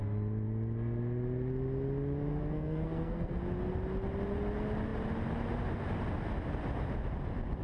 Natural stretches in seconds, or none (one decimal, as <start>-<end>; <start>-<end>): 0.0-2.3; 3.4-7.6